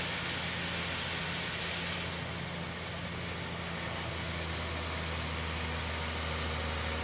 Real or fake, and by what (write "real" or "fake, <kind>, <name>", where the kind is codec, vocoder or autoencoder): real